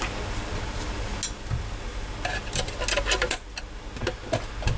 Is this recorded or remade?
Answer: recorded